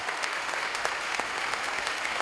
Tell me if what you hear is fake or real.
fake